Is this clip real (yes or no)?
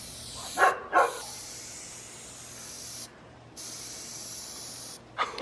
yes